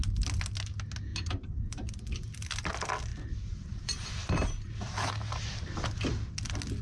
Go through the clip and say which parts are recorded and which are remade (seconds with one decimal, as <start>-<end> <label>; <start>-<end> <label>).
0.0-1.1 recorded; 1.1-2.1 remade; 2.1-3.1 recorded; 3.1-5.1 remade; 5.1-6.8 recorded